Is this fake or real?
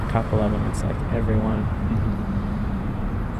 fake